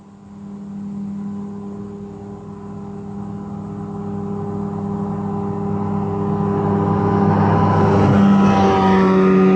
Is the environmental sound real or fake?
real